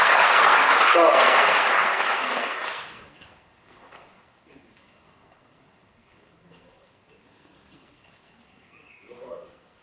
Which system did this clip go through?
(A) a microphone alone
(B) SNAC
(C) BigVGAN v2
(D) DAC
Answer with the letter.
B